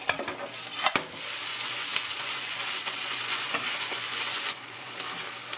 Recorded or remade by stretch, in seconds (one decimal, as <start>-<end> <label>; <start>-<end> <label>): 0.0-1.5 recorded; 1.5-4.9 remade; 4.9-5.6 recorded